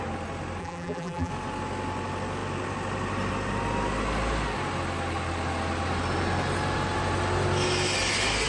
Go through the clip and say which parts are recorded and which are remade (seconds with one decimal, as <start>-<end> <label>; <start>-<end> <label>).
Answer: 0.0-0.6 recorded; 0.6-1.3 remade; 1.3-8.5 recorded